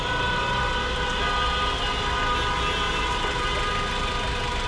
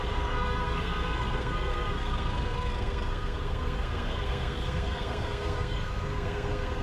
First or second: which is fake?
second